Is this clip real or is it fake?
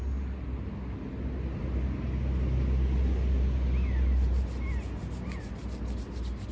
real